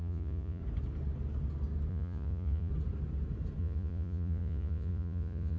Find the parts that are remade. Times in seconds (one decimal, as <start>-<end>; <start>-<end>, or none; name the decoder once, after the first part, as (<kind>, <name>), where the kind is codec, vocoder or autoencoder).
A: 0.0-0.6 (vocoder, Vocos); 1.9-2.7; 3.6-5.6